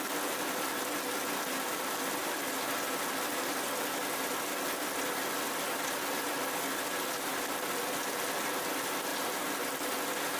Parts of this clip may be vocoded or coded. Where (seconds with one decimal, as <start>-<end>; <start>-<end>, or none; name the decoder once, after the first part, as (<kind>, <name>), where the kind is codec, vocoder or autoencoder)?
none